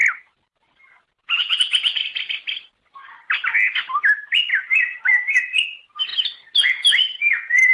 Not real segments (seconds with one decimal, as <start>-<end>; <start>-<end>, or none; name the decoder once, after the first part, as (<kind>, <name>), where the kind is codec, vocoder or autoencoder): none